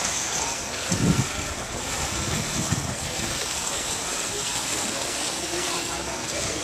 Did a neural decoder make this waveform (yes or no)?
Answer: yes